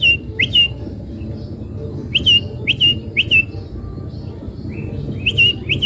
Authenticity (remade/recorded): recorded